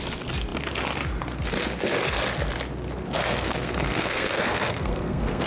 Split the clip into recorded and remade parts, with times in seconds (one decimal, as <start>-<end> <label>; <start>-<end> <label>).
0.0-3.2 recorded; 3.2-5.5 remade